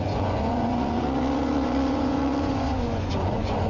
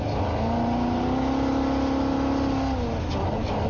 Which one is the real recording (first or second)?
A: second